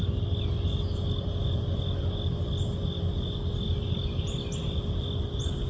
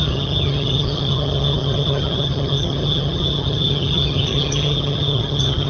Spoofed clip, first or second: second